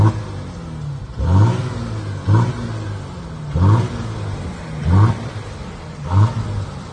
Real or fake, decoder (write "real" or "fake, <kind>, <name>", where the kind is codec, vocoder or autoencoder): real